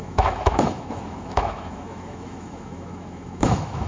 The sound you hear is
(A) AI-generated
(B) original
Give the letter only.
A